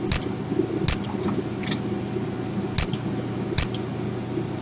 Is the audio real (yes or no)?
yes